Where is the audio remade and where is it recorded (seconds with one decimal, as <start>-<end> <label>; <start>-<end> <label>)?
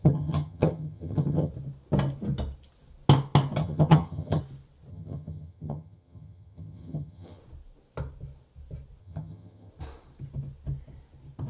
0.0-1.5 remade; 1.5-3.6 recorded; 3.6-4.4 remade; 4.4-4.9 recorded; 4.9-7.4 remade; 7.4-9.0 recorded; 9.0-9.7 remade; 9.7-11.5 recorded